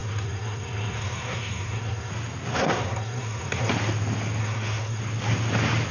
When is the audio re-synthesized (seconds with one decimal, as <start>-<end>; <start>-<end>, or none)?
0.0-2.1; 2.5-3.7; 4.4-5.0